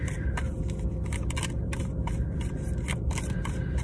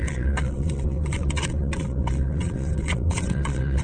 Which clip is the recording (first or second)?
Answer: first